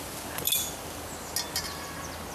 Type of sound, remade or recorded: recorded